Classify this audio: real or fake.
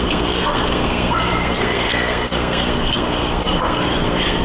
fake